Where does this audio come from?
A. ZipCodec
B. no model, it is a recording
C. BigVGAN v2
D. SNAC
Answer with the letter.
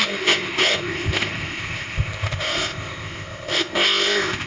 A